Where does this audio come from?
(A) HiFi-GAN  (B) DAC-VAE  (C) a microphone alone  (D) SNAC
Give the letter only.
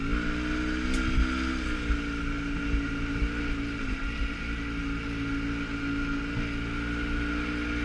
C